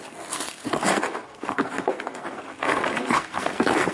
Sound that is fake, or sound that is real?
fake